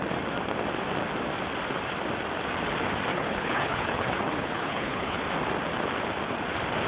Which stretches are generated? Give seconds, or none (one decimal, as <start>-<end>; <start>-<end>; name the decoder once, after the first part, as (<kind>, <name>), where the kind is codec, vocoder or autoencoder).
3.1-5.2 (codec, HILCodec)